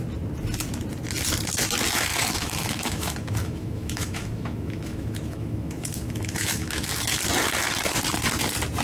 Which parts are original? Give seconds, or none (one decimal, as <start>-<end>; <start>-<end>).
0.0-2.1; 7.2-8.8